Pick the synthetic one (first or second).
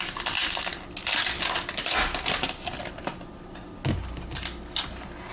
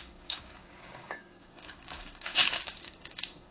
second